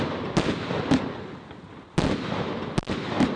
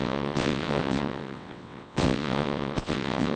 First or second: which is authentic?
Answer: first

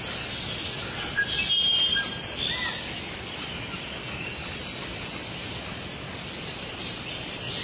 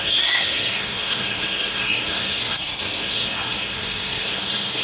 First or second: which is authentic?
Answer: first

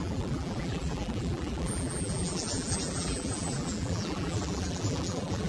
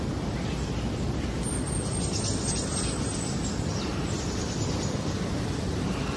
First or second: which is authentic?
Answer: second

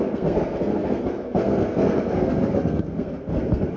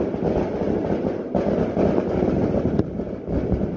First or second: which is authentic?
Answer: second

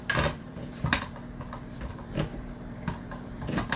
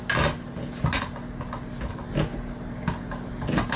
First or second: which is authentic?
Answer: second